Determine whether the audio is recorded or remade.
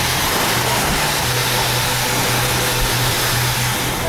recorded